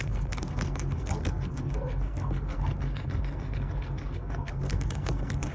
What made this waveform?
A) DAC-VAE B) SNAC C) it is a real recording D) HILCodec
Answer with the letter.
B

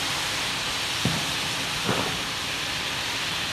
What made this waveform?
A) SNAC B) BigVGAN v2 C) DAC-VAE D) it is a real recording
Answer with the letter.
D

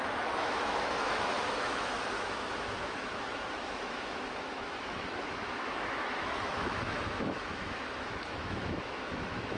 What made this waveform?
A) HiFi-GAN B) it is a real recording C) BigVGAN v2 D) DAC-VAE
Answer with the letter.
D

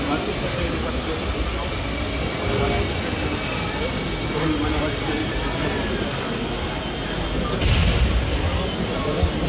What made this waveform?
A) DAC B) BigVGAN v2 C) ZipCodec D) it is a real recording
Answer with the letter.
D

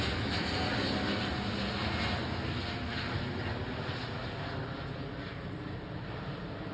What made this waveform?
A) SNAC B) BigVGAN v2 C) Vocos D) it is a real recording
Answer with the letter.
D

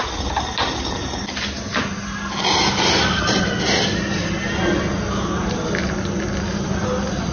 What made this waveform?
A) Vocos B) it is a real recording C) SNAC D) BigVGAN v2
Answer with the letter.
B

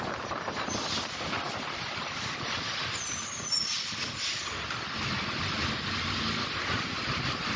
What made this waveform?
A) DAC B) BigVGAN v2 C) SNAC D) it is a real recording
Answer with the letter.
D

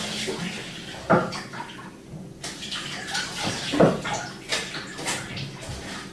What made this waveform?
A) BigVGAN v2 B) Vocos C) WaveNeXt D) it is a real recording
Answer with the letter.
D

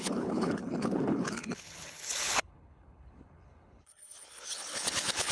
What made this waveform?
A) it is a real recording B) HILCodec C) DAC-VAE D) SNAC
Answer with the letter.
B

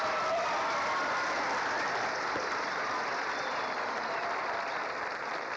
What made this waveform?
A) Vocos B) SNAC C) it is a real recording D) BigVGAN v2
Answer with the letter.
D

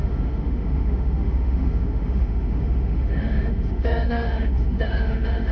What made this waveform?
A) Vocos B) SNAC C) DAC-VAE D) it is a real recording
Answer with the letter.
C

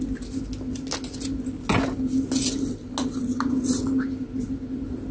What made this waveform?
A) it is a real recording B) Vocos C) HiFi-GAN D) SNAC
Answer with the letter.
A